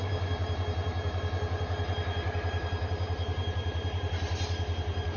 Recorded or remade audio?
remade